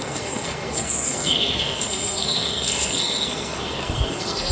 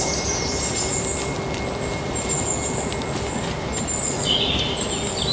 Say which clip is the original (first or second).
second